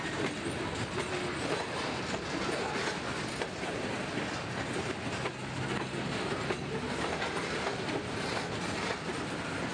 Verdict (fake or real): real